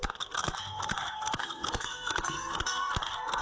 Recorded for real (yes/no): no